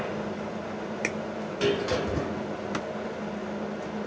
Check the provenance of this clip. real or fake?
real